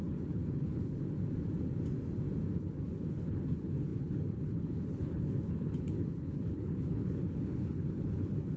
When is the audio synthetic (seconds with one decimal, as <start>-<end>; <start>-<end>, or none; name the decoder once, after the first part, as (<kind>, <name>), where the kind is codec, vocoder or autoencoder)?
0.0-1.0 (codec, HILCodec); 2.6-8.6